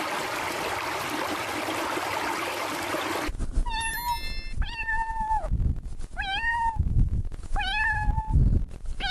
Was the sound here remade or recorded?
recorded